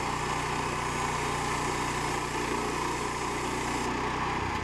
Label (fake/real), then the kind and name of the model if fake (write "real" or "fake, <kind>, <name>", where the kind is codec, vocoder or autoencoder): real